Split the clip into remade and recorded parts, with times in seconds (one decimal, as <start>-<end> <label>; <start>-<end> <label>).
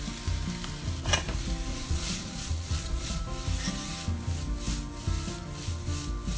0.0-1.7 recorded; 1.7-3.2 remade; 3.2-6.4 recorded